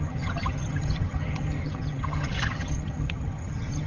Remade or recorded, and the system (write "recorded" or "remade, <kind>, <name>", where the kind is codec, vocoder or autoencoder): remade, vocoder, HiFi-GAN